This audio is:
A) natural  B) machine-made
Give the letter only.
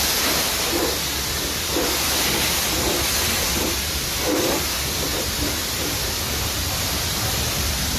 A